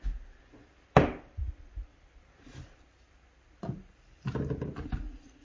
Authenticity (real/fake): real